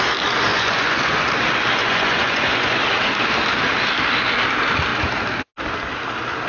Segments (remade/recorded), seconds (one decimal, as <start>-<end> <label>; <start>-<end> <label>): 0.0-0.5 recorded; 0.5-1.2 remade; 1.2-1.8 recorded; 1.8-2.8 remade; 2.8-6.5 recorded